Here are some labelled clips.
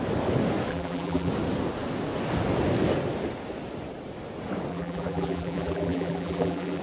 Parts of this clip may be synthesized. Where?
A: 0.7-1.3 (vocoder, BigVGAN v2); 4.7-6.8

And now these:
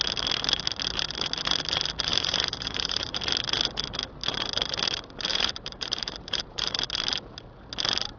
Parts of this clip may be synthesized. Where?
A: 2.1-3.2 (vocoder, BigVGAN v2); 5.3-6.7

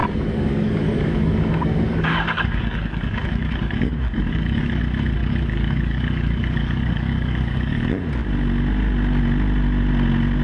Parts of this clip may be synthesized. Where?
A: 0.0-4.8 (codec, DAC); 5.2-8.0